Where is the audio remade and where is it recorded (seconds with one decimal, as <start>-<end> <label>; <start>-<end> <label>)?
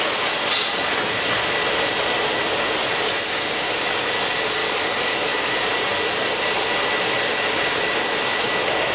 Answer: 0.0-4.6 recorded; 4.6-5.5 remade; 5.5-8.9 recorded